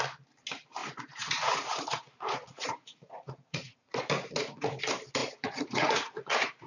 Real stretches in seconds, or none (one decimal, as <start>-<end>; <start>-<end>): 0.0-0.8; 4.8-5.2